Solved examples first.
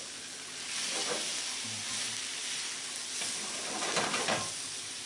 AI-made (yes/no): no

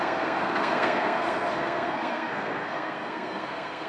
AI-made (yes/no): yes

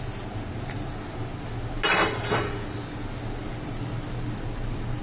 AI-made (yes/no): no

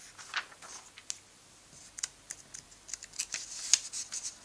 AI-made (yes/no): no